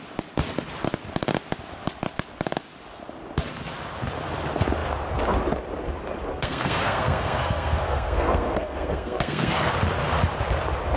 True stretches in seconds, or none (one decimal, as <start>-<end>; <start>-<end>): 0.0-6.3; 9.7-11.0